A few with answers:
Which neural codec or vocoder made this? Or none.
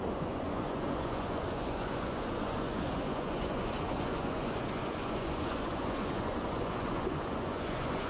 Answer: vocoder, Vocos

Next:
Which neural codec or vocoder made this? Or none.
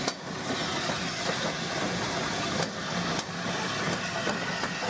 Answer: none